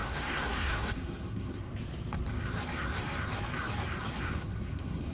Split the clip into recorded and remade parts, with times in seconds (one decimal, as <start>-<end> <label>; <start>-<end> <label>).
0.0-1.7 remade; 1.7-4.2 recorded; 4.2-5.1 remade